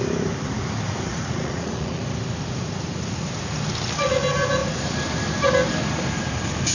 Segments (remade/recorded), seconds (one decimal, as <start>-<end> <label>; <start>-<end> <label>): 0.0-1.1 recorded; 1.1-2.0 remade; 2.0-6.7 recorded